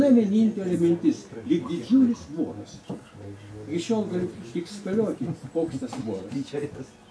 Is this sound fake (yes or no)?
no